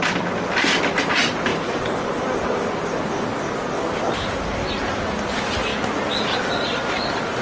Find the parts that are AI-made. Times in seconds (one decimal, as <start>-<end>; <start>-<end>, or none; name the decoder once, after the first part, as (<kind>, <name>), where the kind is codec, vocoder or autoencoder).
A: none